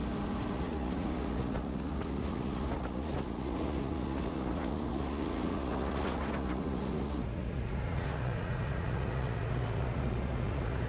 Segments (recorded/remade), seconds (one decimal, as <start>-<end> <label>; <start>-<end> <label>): 0.0-0.5 recorded; 0.5-10.9 remade